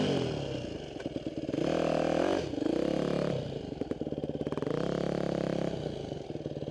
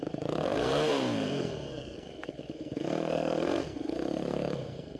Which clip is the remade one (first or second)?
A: second